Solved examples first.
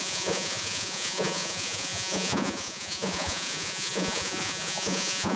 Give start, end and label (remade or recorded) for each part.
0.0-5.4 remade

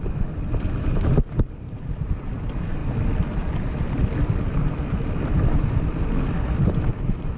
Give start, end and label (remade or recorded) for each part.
0.0-7.4 recorded

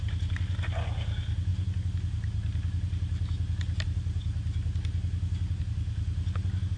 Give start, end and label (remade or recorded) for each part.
0.0-6.8 recorded

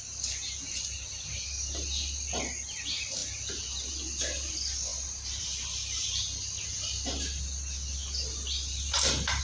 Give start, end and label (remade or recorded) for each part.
0.0-9.4 recorded

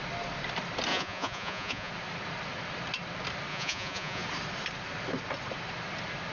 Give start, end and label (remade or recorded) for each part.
0.0-0.9 recorded; 0.9-1.9 remade; 1.9-3.5 recorded; 3.5-4.2 remade; 4.2-6.3 recorded